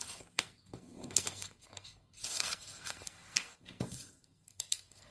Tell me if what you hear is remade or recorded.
remade